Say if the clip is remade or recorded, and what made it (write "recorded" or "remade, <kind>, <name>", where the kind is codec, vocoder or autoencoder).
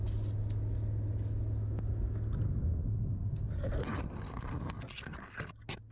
recorded